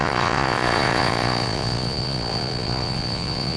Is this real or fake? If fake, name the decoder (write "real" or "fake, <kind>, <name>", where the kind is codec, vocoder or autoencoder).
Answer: fake, vocoder, Vocos